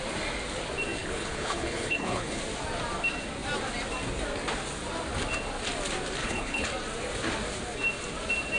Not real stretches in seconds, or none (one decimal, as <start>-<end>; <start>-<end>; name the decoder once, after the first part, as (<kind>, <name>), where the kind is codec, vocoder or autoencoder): 1.0-2.4 (codec, HILCodec); 6.2-6.7